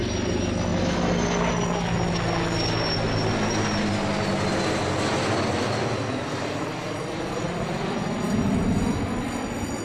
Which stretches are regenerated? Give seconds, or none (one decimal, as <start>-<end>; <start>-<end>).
none